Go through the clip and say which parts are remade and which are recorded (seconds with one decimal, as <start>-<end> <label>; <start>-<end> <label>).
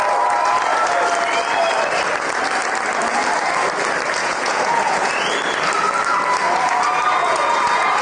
0.0-4.2 recorded; 4.2-5.1 remade; 5.1-7.2 recorded; 7.2-8.0 remade